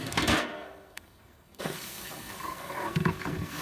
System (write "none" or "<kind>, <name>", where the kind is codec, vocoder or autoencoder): codec, SNAC